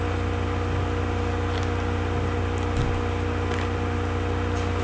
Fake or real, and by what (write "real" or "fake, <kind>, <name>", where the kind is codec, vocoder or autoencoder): real